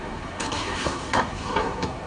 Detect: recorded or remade remade